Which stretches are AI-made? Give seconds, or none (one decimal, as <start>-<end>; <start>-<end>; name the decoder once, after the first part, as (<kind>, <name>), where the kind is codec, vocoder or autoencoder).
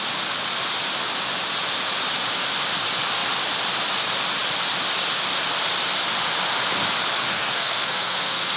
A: 7.3-8.6 (codec, SNAC)